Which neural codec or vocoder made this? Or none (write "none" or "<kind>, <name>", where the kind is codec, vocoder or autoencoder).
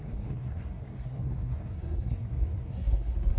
codec, SNAC